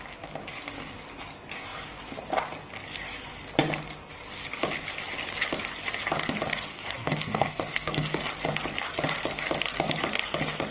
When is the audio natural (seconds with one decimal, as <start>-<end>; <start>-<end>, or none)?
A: 0.0-6.7; 8.2-10.7